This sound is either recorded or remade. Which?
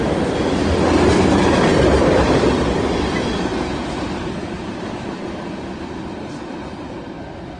recorded